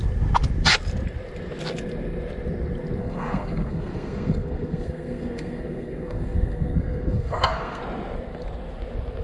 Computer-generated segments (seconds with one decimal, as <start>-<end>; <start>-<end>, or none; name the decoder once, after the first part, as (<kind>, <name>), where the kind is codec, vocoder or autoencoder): 3.0-7.8 (codec, SNAC)